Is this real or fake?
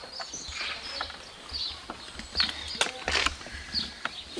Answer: real